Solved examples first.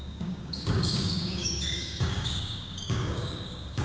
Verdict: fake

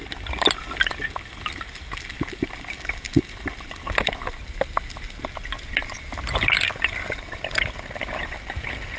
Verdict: real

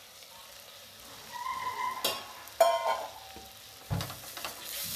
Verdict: real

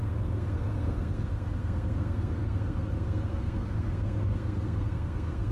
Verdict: fake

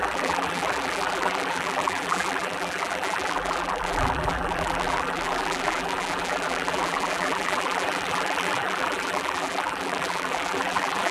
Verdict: fake